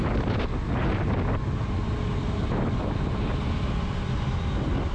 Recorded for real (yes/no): yes